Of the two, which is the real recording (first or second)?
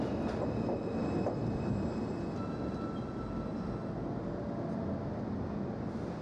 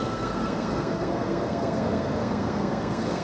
first